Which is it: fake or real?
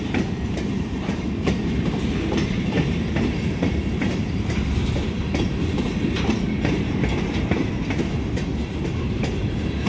fake